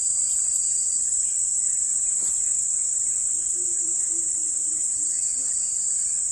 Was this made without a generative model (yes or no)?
no